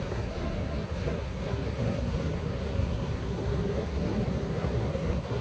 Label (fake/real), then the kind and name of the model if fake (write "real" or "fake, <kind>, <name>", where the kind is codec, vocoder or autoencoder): fake, codec, SNAC